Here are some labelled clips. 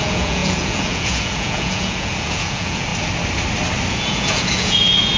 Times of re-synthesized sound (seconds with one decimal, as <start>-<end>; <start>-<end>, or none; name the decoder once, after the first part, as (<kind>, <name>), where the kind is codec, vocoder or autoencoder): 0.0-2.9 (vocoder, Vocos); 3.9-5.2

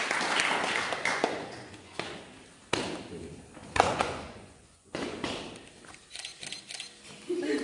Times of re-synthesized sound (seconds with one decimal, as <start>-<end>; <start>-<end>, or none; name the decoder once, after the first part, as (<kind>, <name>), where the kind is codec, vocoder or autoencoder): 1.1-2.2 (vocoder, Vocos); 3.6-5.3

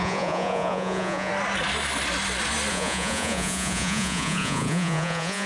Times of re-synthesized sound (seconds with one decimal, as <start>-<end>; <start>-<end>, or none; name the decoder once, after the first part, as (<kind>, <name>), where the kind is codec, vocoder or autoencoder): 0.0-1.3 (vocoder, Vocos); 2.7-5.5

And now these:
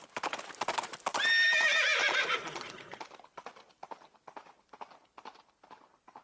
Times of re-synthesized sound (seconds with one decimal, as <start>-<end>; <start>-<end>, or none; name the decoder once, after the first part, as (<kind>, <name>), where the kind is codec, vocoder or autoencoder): 2.0-3.0 (vocoder, Vocos)